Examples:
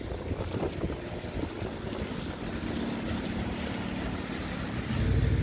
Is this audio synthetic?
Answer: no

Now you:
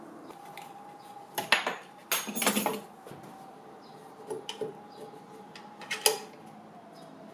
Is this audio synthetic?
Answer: no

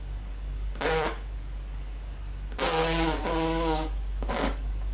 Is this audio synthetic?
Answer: yes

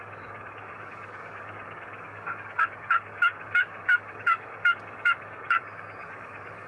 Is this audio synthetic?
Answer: yes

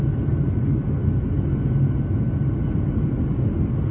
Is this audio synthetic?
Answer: no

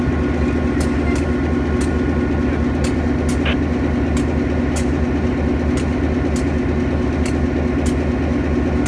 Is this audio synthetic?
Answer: no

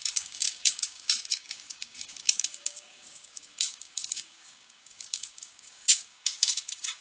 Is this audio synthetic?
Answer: yes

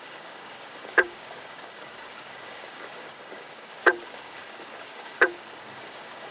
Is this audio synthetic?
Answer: yes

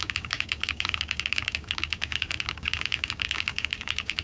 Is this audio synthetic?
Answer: yes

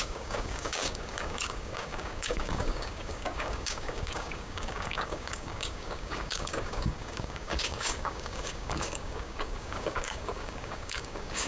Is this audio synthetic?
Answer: yes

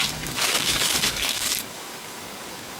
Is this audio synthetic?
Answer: yes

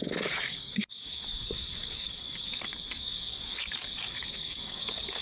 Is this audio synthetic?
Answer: yes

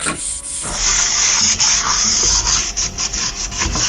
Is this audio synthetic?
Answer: yes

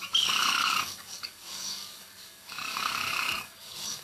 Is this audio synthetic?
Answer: yes